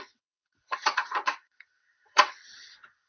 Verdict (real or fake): fake